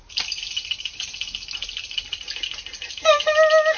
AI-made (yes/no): no